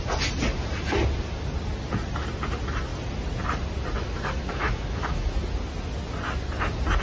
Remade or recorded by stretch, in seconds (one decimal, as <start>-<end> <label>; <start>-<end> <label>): 0.0-4.0 recorded; 4.0-5.4 remade; 5.4-7.0 recorded